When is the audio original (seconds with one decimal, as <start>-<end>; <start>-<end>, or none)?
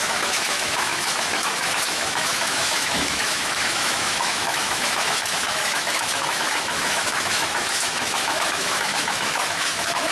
none